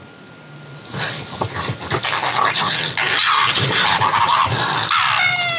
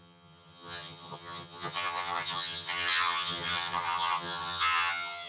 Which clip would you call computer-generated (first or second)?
second